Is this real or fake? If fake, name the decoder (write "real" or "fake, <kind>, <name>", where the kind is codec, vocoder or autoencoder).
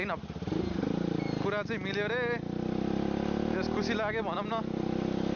real